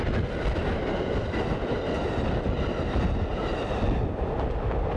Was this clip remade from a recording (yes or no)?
no